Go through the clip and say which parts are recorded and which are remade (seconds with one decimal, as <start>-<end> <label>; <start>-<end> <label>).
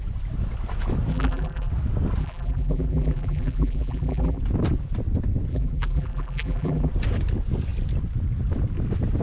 0.0-1.1 recorded; 1.1-1.7 remade; 1.7-2.2 recorded; 2.2-4.4 remade; 4.4-5.5 recorded; 5.5-6.9 remade; 6.9-9.2 recorded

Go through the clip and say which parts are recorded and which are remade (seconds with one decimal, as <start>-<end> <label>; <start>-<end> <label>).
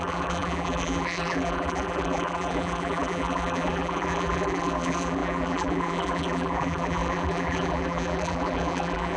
0.0-9.2 remade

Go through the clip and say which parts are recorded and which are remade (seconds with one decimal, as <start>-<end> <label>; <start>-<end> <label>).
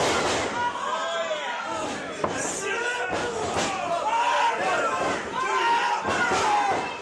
0.0-7.0 recorded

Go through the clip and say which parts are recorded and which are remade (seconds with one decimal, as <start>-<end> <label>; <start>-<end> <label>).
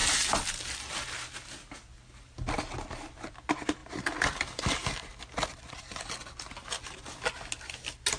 0.0-0.6 remade; 0.6-3.8 recorded; 3.8-5.2 remade; 5.2-8.2 recorded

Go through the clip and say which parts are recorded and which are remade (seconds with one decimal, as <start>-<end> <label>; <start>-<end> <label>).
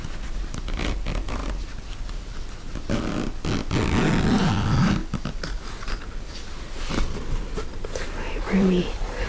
0.0-1.4 remade; 1.4-4.3 recorded; 4.3-5.0 remade; 5.0-6.8 recorded; 6.8-9.3 remade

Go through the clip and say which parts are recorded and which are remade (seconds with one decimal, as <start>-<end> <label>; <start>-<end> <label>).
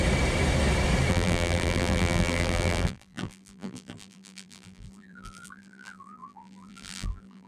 0.0-1.1 recorded; 1.1-7.5 remade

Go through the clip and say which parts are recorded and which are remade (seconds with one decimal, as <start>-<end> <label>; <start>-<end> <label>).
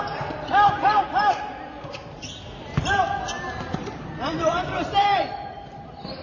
0.0-0.9 recorded; 0.9-1.4 remade; 1.4-2.6 recorded; 2.6-5.5 remade; 5.5-6.2 recorded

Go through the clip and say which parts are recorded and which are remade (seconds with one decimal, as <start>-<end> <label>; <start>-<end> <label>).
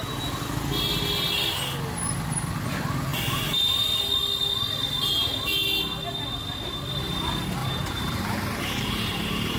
0.0-7.6 recorded; 7.6-9.1 remade; 9.1-9.6 recorded